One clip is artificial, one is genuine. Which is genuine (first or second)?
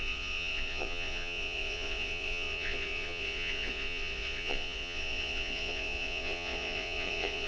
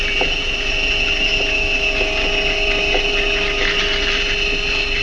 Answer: second